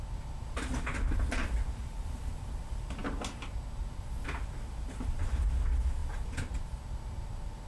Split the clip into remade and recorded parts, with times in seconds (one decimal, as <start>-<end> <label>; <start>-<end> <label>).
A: 0.0-1.8 recorded; 1.8-2.3 remade; 2.3-7.7 recorded